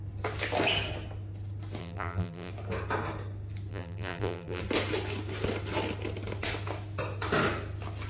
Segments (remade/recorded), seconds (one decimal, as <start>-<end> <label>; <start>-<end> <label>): 0.0-1.8 recorded; 1.8-2.5 remade; 2.5-3.7 recorded; 3.7-4.6 remade; 4.6-8.1 recorded